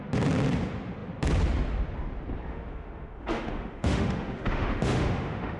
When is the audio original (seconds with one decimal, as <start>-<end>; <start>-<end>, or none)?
0.0-2.5

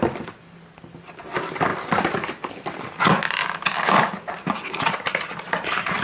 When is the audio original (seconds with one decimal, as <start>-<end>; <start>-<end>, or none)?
0.0-6.0

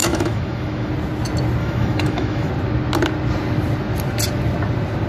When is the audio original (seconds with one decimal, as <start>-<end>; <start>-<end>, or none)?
0.9-1.6; 2.5-5.1

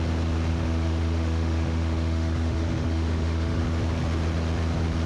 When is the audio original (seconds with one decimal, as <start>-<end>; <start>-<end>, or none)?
0.0-0.5; 3.6-5.1

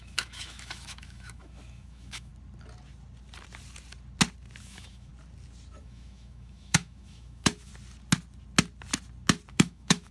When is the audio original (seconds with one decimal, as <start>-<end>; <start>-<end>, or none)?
2.3-4.6; 5.1-5.8; 7.7-9.5

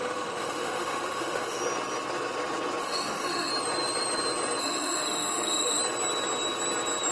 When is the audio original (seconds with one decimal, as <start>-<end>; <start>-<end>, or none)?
1.6-2.8; 3.5-4.6; 5.8-7.1

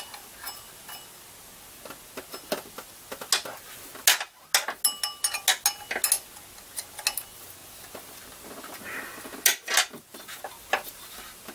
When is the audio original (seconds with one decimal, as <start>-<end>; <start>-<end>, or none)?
0.0-11.5

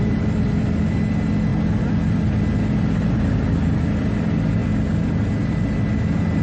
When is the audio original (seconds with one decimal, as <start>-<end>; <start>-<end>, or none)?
0.0-6.4